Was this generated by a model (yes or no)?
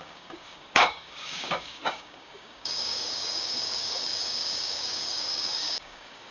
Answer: yes